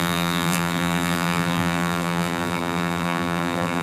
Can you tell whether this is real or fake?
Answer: fake